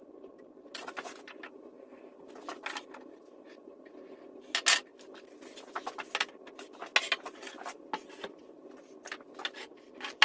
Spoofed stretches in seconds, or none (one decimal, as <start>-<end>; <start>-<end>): none